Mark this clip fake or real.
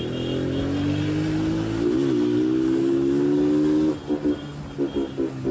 real